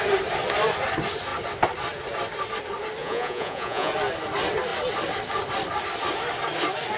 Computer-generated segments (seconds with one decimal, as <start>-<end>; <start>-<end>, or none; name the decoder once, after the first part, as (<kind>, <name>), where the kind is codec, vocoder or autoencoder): 3.0-3.9 (vocoder, Vocos)

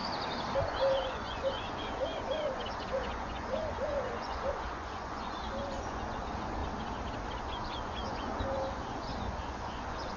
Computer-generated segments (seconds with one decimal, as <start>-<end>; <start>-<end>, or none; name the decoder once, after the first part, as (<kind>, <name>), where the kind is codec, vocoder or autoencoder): 0.6-6.6 (vocoder, Vocos); 7.4-10.2

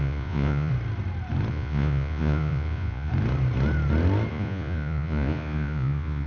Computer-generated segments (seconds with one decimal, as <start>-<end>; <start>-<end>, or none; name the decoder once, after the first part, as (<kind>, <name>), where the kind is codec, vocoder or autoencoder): 0.0-0.7 (vocoder, Vocos); 1.5-3.1; 4.3-6.3

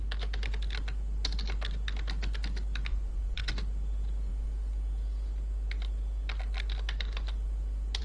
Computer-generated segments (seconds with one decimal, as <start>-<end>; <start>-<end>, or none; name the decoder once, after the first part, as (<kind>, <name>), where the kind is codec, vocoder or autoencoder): 2.9-3.5 (vocoder, Vocos)